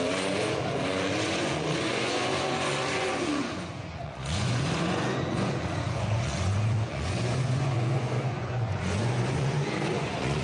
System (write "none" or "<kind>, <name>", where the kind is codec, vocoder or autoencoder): vocoder, Vocos